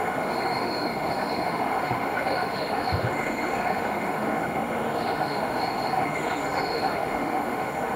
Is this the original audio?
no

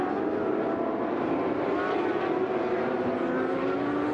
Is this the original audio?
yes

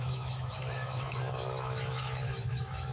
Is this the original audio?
no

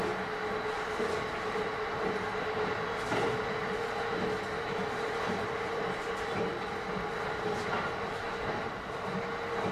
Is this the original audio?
yes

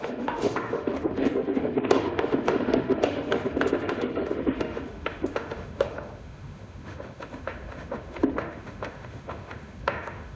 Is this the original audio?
no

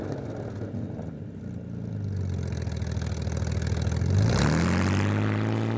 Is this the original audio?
yes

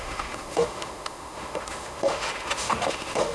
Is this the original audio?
no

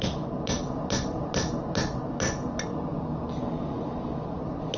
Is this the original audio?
yes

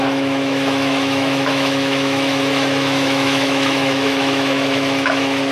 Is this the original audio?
no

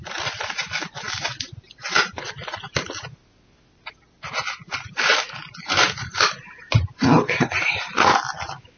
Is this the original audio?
yes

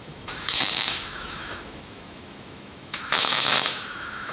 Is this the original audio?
no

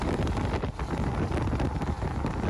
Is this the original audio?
yes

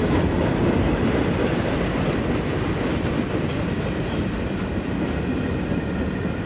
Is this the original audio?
yes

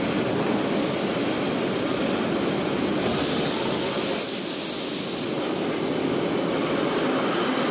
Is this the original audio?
yes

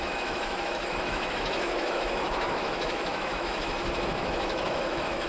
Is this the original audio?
no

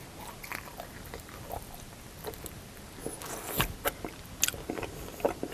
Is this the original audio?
yes